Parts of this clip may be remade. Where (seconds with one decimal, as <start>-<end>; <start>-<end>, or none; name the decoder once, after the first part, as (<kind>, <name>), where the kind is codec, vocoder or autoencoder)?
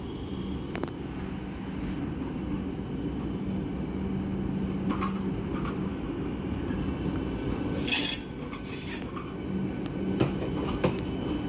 5.9-6.6 (autoencoder, DAC-VAE)